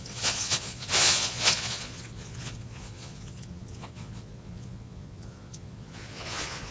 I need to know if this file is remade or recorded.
remade